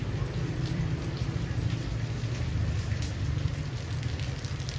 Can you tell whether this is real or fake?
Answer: fake